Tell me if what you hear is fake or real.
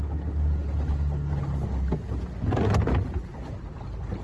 real